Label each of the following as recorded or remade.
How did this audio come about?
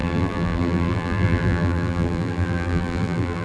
remade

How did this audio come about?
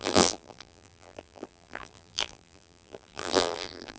remade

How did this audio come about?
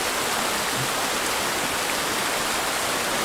remade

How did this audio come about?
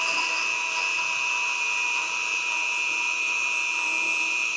remade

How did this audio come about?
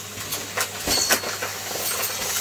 recorded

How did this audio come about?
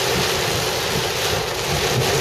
recorded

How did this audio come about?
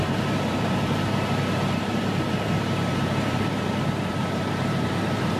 remade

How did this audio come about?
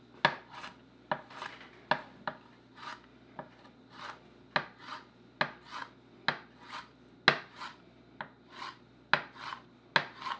recorded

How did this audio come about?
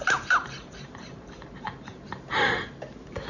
remade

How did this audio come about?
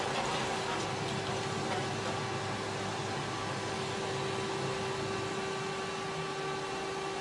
recorded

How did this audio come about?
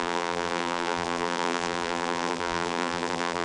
remade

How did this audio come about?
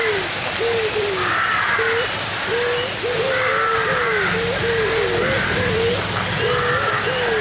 recorded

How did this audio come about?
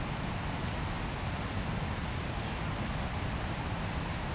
recorded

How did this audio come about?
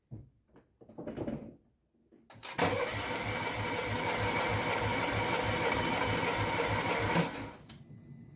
recorded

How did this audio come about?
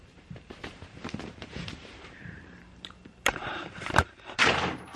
remade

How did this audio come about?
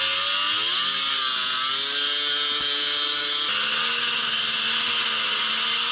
recorded